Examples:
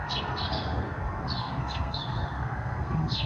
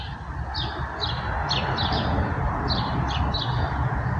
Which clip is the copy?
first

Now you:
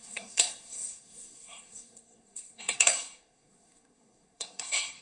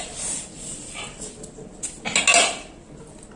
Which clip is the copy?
first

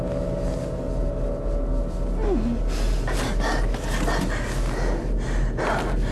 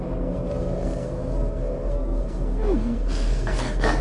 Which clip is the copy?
second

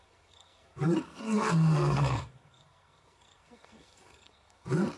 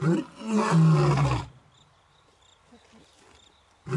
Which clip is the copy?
first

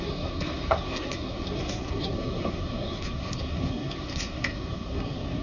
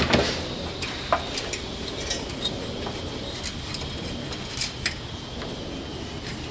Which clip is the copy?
first